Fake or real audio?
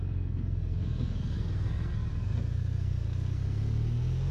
fake